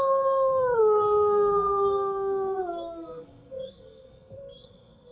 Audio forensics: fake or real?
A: fake